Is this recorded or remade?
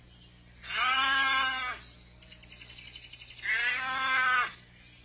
recorded